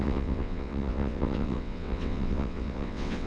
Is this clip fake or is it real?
fake